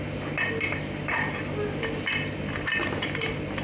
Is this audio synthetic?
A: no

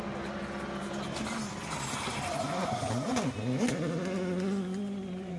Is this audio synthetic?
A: no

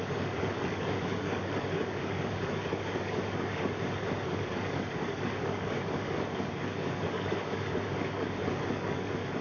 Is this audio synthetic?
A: yes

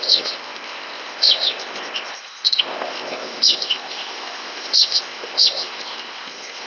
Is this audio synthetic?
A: yes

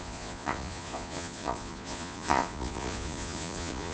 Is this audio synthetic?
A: yes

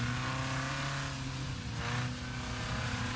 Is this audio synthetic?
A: no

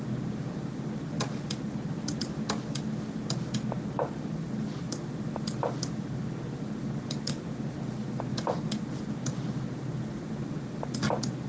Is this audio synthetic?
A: no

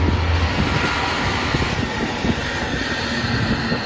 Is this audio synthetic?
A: no